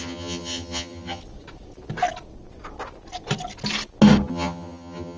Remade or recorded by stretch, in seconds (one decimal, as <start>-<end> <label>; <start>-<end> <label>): 0.0-1.2 remade; 1.2-4.3 recorded; 4.3-5.2 remade